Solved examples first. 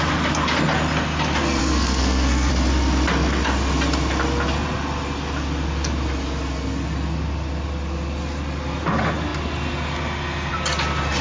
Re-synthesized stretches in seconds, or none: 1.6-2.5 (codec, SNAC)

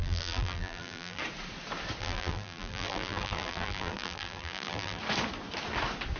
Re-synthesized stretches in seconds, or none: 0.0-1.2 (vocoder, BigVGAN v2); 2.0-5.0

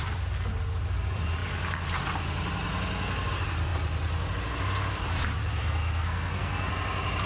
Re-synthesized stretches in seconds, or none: 5.6-6.7 (codec, SNAC)

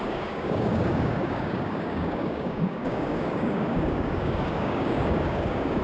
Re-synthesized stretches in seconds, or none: 0.0-5.8 (codec, DAC)

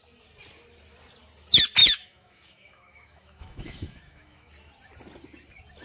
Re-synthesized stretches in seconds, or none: 1.8-4.5 (autoencoder, DAC-VAE)